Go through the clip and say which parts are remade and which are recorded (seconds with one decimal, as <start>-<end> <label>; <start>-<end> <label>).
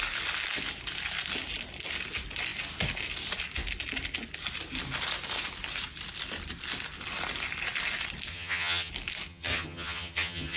0.0-8.3 recorded; 8.3-8.9 remade; 8.9-9.3 recorded; 9.3-10.6 remade